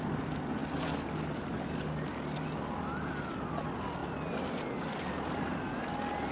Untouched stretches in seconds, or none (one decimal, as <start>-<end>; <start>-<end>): 0.0-6.3